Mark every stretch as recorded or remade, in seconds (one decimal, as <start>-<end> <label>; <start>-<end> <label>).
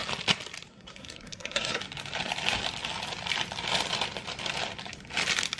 0.0-0.7 recorded; 0.7-1.8 remade; 1.8-5.6 recorded